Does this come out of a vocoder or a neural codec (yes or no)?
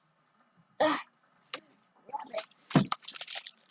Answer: no